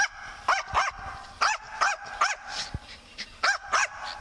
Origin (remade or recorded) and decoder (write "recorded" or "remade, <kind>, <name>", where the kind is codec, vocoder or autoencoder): recorded